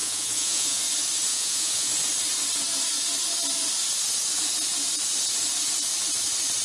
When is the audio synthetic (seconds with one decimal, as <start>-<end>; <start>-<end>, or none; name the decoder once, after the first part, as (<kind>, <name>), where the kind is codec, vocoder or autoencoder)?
0.0-0.8 (vocoder, Vocos); 1.3-1.9